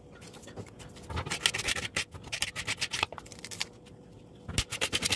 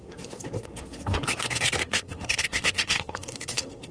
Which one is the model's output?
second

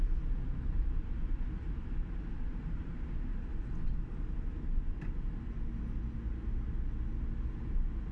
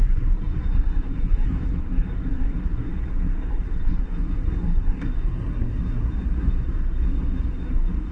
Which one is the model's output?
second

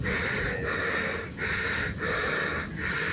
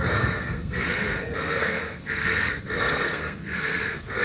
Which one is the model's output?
second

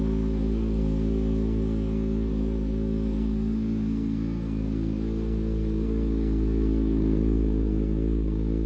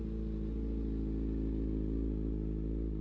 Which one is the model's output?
first